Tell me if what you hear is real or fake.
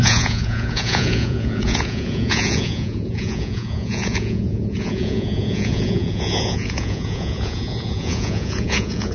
fake